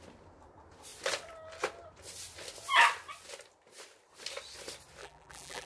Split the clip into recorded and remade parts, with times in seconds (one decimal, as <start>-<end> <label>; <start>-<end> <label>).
0.0-5.0 recorded; 5.0-5.7 remade